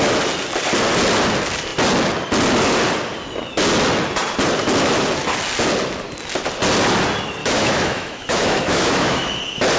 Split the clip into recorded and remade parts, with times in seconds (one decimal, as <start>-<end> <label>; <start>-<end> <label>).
0.0-7.4 recorded; 7.4-9.4 remade; 9.4-9.8 recorded